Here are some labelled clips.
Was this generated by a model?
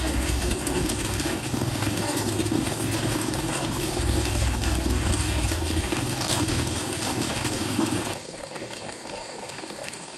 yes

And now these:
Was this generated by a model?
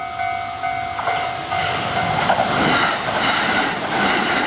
no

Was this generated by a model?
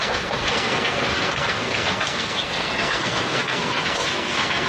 yes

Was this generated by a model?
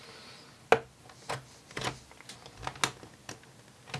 no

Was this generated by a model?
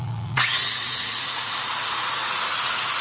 yes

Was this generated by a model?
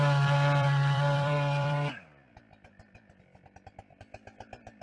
yes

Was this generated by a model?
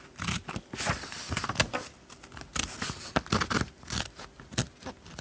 no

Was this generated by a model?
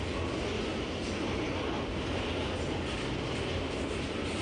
no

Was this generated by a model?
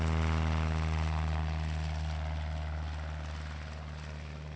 no